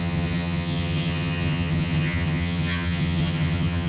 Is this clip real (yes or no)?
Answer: no